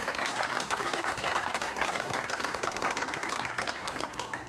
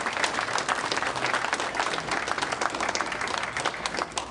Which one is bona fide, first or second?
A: second